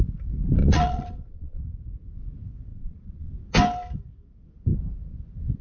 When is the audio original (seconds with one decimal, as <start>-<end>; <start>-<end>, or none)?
0.0-0.6; 1.6-2.7; 3.3-5.6